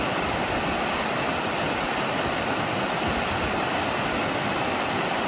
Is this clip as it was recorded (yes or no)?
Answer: no